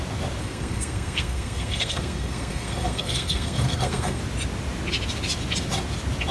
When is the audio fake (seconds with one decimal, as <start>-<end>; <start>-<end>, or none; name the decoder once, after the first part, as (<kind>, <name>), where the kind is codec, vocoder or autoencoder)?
0.4-4.2 (codec, SNAC)